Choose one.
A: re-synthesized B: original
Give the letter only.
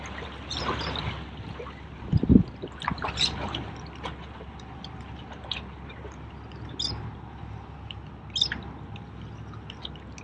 B